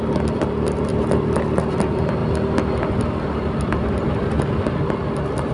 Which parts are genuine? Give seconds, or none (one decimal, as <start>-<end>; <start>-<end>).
0.9-1.6; 2.2-5.5